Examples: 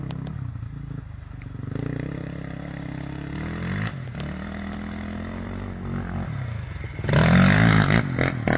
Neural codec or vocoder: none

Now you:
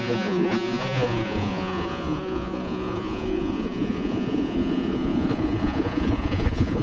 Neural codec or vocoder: vocoder, Vocos